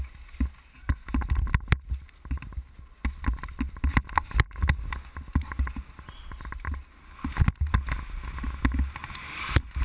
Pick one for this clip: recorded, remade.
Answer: recorded